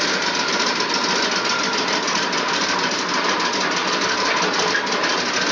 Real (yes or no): yes